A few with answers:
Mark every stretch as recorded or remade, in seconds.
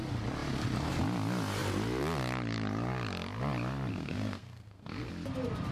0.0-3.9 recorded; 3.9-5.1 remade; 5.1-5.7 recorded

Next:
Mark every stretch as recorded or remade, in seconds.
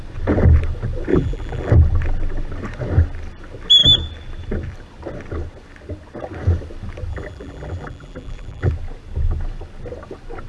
0.0-1.1 recorded; 1.1-1.7 remade; 1.7-7.1 recorded; 7.1-8.7 remade; 8.7-10.5 recorded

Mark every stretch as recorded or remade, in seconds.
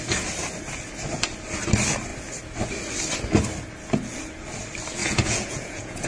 0.0-5.0 recorded; 5.0-6.1 remade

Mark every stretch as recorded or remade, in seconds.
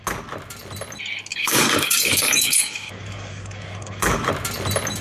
0.0-1.3 recorded; 1.3-4.3 remade; 4.3-5.0 recorded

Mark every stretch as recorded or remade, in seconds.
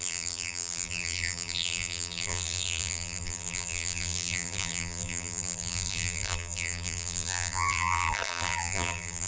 0.0-9.3 remade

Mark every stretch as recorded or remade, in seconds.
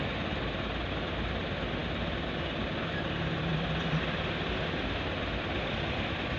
0.0-6.4 recorded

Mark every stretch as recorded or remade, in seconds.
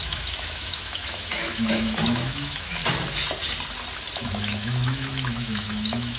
0.0-2.8 remade; 2.8-4.2 recorded; 4.2-6.2 remade